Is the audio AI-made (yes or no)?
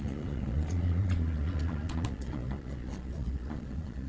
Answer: yes